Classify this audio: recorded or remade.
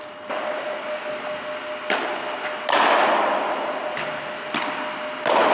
recorded